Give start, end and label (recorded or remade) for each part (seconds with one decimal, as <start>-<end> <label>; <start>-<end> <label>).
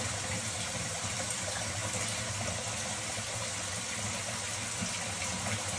0.0-1.8 remade; 1.8-5.1 recorded; 5.1-5.8 remade